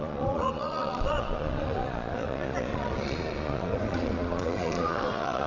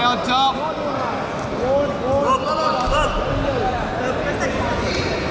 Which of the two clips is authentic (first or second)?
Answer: second